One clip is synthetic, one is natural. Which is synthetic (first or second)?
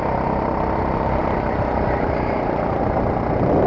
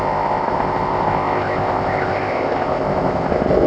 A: second